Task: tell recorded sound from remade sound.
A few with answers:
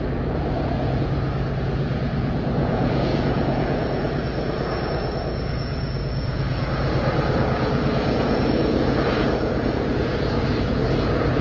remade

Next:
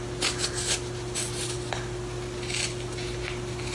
recorded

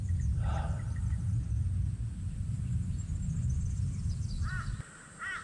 recorded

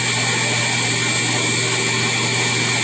recorded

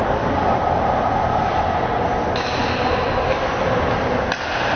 recorded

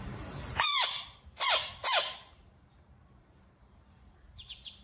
remade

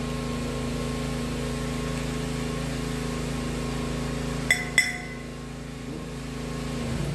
recorded